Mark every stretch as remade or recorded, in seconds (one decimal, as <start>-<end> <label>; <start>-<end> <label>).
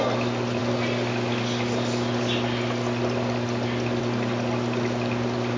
0.0-5.6 recorded